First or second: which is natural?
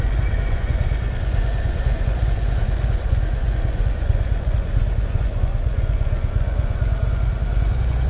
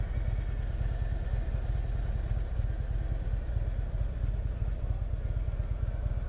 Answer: second